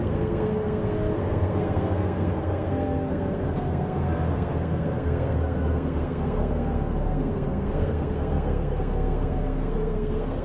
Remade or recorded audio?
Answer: remade